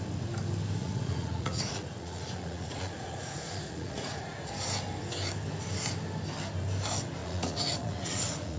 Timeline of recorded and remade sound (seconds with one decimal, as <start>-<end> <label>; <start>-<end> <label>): 0.0-0.8 recorded; 0.8-4.5 remade; 4.5-7.2 recorded; 7.2-8.6 remade